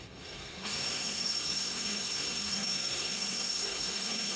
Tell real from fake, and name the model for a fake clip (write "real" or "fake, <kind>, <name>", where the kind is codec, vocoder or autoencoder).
fake, codec, SNAC